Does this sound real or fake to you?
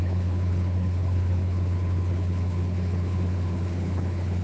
fake